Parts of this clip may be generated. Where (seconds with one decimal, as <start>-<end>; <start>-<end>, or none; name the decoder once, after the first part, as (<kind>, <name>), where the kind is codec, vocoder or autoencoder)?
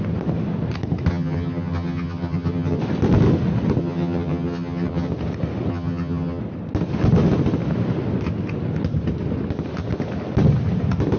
1.1-2.8 (vocoder, HiFi-GAN); 3.8-5.1; 5.7-6.4